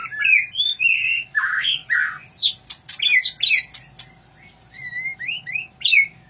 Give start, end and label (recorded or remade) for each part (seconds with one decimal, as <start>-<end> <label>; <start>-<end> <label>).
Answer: 0.0-0.6 recorded; 0.6-1.8 remade; 1.8-4.9 recorded; 4.9-6.3 remade